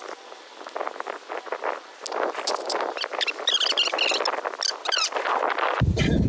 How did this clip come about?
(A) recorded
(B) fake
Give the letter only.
A